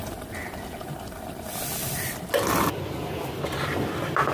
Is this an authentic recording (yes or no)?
yes